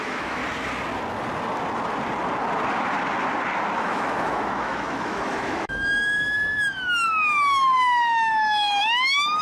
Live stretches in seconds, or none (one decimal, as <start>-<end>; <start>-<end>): 0.4-3.8